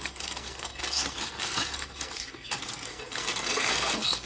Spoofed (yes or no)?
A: yes